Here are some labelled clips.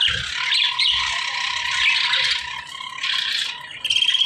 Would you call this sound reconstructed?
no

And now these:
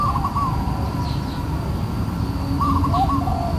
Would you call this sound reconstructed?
no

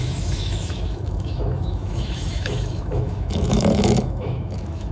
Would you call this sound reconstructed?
yes